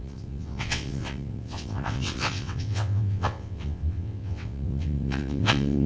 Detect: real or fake fake